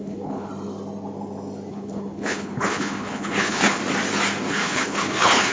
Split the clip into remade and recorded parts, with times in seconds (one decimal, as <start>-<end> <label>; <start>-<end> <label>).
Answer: 0.0-0.5 remade; 0.5-1.7 recorded; 1.7-3.8 remade; 3.8-4.5 recorded; 4.5-5.5 remade